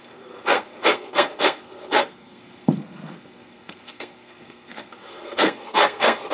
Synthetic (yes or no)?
yes